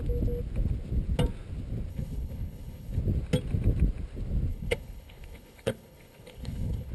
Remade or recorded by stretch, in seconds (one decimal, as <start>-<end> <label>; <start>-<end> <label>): 0.0-1.9 recorded; 1.9-3.0 remade; 3.0-4.5 recorded; 4.5-6.9 remade